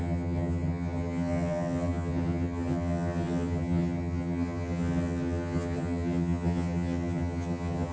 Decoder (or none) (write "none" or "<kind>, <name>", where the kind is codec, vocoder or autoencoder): vocoder, HiFi-GAN